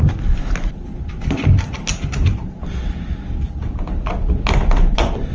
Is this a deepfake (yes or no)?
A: no